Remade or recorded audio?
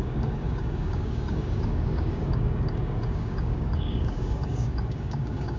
remade